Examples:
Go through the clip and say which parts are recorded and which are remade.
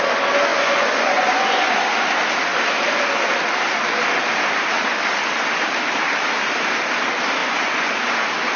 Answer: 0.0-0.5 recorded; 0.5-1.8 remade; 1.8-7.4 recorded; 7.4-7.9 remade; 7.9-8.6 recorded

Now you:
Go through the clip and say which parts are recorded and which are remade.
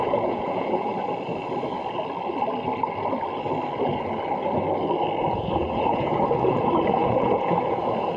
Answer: 0.0-0.9 remade; 0.9-5.2 recorded; 5.2-8.2 remade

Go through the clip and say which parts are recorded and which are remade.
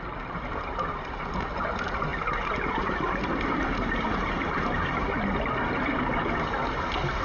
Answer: 0.0-7.2 recorded